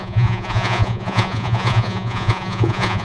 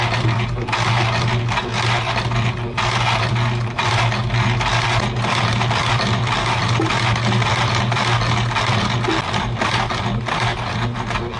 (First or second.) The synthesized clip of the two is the first